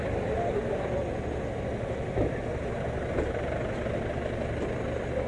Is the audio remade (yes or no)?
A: no